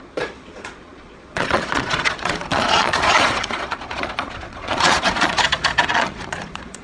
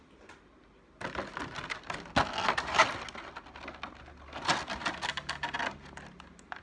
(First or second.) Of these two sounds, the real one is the second